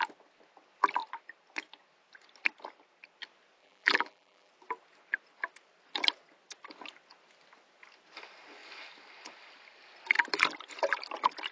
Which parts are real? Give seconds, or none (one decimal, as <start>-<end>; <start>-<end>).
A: 0.0-3.6; 4.5-11.5